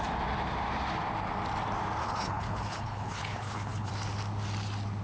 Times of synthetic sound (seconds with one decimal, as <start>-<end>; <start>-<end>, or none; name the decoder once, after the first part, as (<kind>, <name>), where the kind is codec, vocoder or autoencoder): 2.0-3.9 (codec, HILCodec)